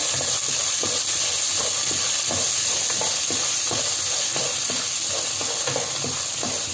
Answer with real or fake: real